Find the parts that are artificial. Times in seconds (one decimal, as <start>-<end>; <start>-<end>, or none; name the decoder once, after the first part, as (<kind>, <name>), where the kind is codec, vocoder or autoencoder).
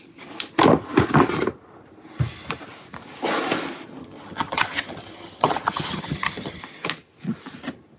4.0-6.6 (vocoder, HiFi-GAN)